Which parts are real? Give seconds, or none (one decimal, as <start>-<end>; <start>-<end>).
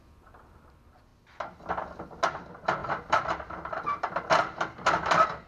1.1-2.4